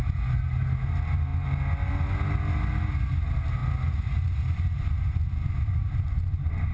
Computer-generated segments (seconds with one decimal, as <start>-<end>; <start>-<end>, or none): none